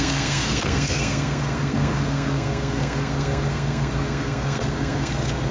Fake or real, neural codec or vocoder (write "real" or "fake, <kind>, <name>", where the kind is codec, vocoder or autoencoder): fake, codec, SNAC